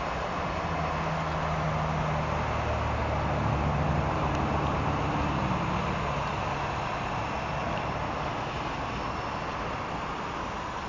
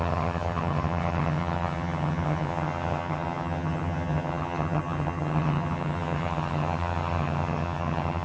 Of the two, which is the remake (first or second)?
second